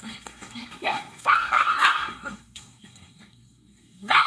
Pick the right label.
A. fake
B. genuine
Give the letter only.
A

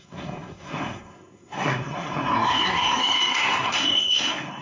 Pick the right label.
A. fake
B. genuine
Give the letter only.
A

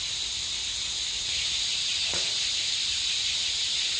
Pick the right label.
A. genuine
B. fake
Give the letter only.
A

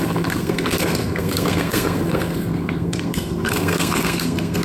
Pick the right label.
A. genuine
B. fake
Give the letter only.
B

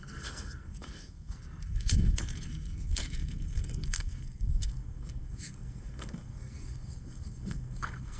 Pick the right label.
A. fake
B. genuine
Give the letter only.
A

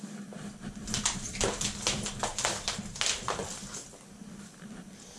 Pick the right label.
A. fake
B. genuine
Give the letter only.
B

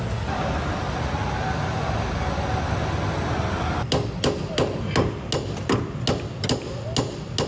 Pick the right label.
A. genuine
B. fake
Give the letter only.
A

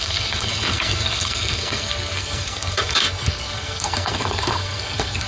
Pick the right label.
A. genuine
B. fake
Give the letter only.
B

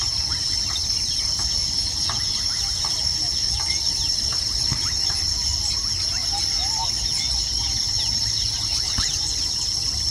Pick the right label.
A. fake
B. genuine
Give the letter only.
B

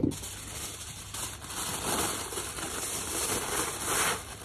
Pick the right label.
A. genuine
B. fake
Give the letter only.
A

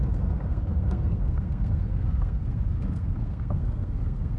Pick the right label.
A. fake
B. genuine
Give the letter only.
A